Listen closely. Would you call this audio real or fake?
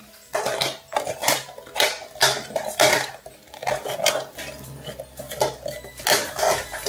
real